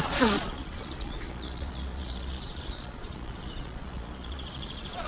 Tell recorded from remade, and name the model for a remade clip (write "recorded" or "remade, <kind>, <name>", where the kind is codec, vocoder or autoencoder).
remade, vocoder, Vocos